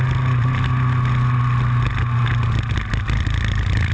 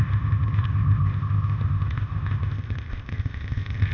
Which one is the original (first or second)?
first